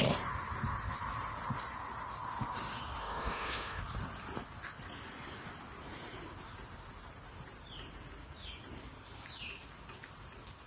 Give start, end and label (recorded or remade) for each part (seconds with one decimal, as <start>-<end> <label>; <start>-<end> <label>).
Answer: 0.0-3.0 recorded; 3.0-3.8 remade; 3.8-10.7 recorded